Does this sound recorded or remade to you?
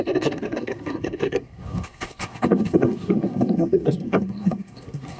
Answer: remade